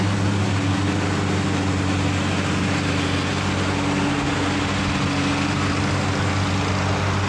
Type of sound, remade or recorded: recorded